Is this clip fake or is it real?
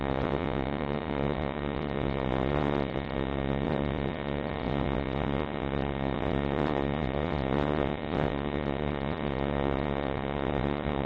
fake